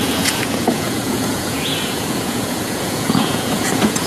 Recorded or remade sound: remade